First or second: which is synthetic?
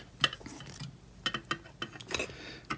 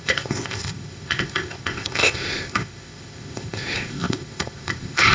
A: second